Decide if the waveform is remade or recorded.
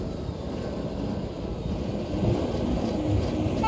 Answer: recorded